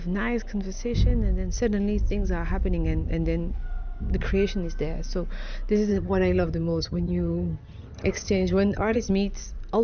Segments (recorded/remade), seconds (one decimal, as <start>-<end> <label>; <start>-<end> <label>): 0.0-5.9 recorded; 5.9-9.1 remade; 9.1-9.8 recorded